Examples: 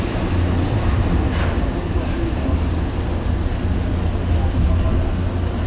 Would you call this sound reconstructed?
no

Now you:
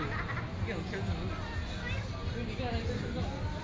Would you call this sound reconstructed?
no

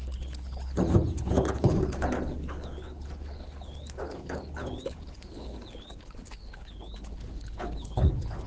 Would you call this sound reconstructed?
yes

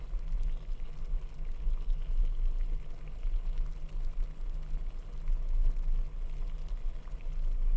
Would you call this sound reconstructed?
no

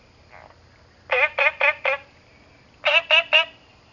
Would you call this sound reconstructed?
no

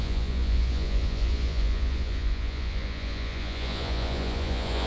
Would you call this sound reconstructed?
yes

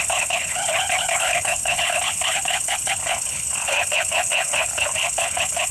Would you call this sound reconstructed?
yes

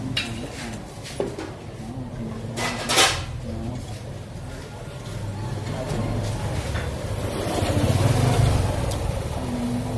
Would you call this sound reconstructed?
no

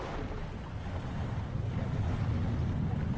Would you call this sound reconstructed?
no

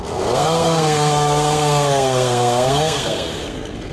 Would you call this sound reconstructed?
yes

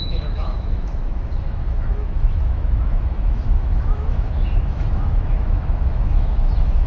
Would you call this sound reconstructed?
yes